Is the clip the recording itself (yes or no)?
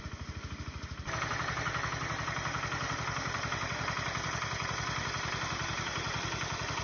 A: no